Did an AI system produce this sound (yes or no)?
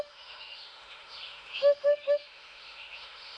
yes